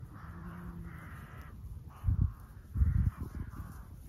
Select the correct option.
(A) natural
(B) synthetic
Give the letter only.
A